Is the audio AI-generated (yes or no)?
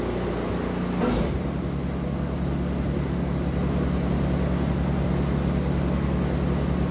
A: no